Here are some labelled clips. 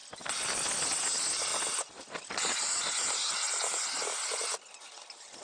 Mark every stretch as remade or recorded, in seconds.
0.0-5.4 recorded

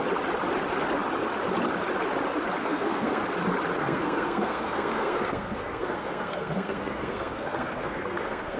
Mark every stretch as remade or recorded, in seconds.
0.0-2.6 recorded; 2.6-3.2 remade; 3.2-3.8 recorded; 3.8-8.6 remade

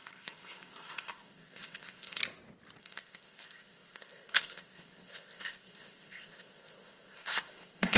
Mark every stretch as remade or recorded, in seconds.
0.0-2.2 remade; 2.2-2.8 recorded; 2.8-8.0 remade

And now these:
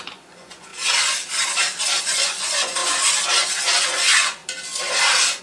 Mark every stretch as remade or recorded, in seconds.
0.0-0.7 remade; 0.7-2.0 recorded; 2.0-2.8 remade; 2.8-3.9 recorded; 3.9-4.4 remade; 4.4-5.4 recorded

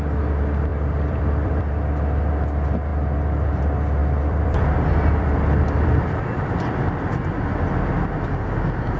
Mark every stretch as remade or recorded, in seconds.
0.0-0.7 recorded; 0.7-1.6 remade; 1.6-2.9 recorded; 2.9-3.6 remade; 3.6-4.0 recorded; 4.0-7.4 remade; 7.4-9.0 recorded